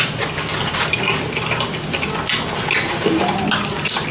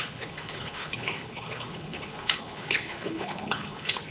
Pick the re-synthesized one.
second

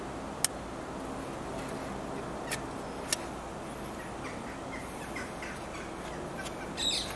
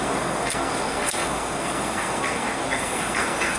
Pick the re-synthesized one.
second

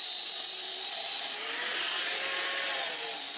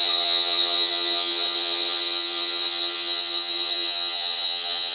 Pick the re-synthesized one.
second